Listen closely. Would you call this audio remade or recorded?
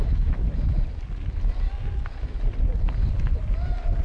recorded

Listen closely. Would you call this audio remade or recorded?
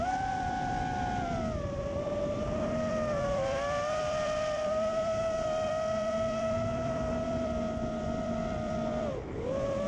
remade